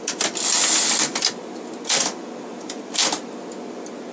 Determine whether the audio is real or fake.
real